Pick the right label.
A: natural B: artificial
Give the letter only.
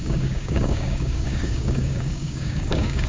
B